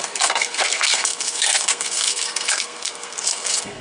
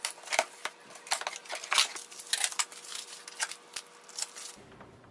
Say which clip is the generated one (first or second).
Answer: first